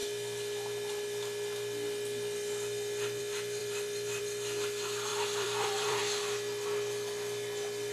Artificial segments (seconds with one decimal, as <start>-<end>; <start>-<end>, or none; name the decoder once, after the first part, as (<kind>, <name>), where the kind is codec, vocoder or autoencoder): 3.6-4.2 (vocoder, BigVGAN v2); 5.1-6.0